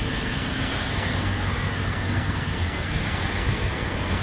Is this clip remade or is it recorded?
remade